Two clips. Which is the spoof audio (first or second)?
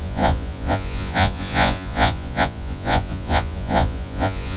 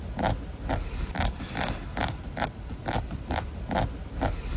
first